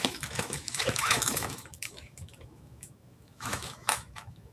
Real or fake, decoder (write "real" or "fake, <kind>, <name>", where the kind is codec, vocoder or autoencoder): fake, autoencoder, DAC-VAE